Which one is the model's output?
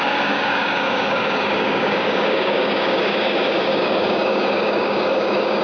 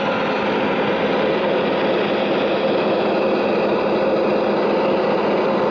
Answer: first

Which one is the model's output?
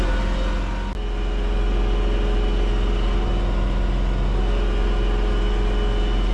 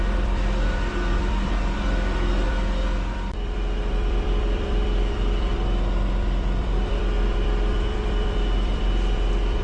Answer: second